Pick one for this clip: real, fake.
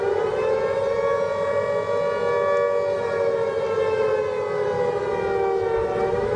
real